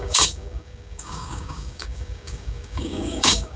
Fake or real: fake